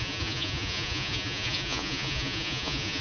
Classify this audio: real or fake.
fake